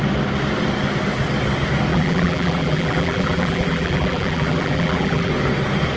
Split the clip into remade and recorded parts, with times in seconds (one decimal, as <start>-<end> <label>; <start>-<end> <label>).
0.0-1.9 recorded; 1.9-5.3 remade; 5.3-6.0 recorded